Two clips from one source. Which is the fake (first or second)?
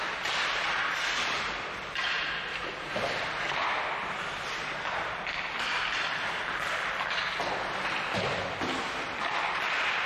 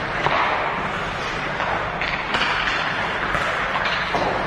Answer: first